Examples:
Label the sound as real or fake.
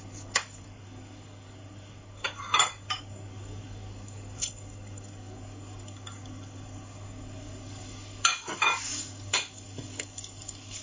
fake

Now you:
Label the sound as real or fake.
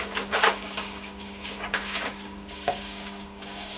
fake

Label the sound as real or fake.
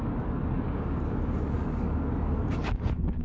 fake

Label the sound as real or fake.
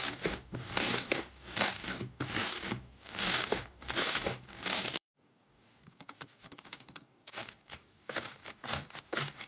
fake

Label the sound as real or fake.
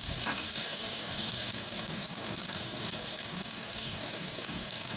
fake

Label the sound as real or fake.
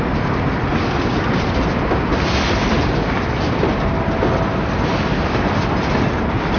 real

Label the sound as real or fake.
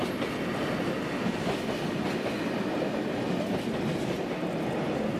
real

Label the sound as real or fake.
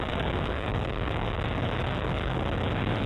fake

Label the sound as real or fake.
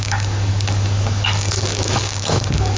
fake